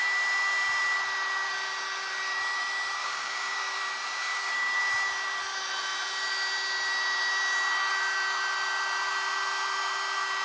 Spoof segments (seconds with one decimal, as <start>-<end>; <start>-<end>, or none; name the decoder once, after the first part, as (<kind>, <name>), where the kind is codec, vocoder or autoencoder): 3.0-3.8 (codec, DAC); 4.2-4.8